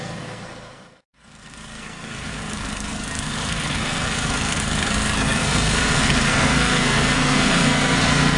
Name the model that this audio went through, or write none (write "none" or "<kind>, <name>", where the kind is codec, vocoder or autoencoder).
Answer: codec, SNAC